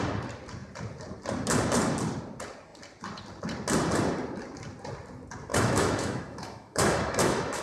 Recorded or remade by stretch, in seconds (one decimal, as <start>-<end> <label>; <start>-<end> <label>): 0.0-5.5 recorded; 5.5-7.6 remade